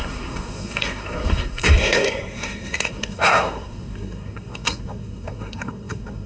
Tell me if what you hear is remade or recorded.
remade